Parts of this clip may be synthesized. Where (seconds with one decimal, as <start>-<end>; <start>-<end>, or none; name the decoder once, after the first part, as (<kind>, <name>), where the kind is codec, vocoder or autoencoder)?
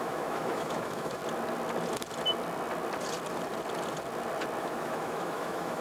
0.0-1.2 (autoencoder, DAC-VAE); 4.6-5.8